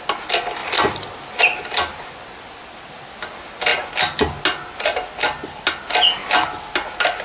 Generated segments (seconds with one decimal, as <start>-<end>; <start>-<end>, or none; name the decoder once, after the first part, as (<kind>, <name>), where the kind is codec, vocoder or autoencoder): 6.2-6.7 (vocoder, BigVGAN v2)